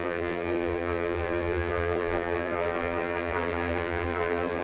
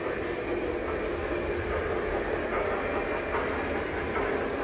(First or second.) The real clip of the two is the second